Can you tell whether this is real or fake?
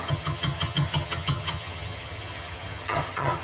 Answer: fake